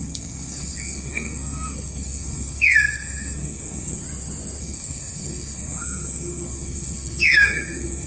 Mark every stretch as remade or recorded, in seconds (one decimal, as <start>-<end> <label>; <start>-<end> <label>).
0.0-4.0 remade; 4.0-4.6 recorded; 4.6-8.1 remade